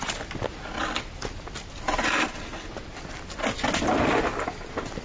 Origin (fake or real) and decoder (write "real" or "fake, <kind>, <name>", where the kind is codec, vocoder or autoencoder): real